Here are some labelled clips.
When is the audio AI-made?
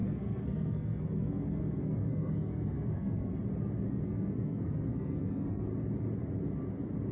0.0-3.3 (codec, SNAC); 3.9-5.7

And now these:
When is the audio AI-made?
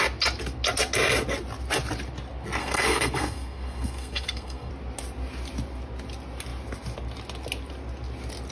2.6-4.7 (codec, SNAC)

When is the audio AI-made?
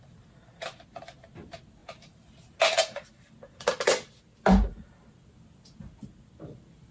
none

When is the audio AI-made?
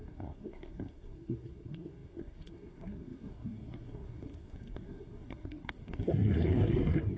0.0-7.2 (codec, SNAC)